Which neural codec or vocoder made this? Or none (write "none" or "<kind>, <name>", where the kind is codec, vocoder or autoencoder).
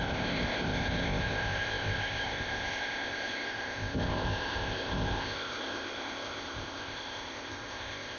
codec, ZipCodec